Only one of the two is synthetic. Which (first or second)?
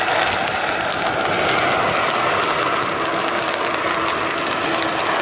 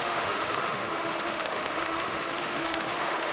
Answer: second